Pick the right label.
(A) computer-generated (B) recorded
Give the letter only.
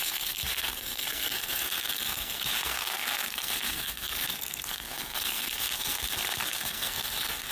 A